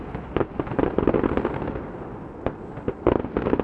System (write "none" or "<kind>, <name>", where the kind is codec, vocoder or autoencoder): none